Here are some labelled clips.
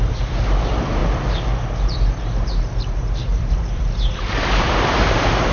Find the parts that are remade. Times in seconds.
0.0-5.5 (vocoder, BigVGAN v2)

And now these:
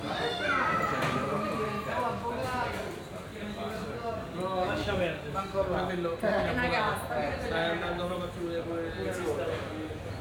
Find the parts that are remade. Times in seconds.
3.3-5.9 (codec, DAC); 7.6-8.3

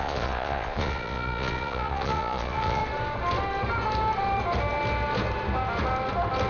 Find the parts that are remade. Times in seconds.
0.0-2.8 (vocoder, Vocos)